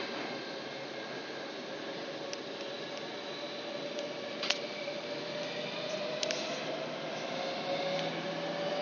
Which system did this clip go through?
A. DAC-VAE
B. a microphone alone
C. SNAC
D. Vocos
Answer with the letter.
B